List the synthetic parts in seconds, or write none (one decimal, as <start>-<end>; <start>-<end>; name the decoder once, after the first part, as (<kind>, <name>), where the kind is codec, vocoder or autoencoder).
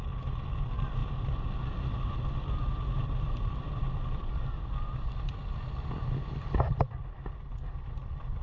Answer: none